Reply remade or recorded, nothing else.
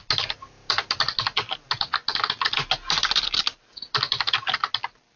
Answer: recorded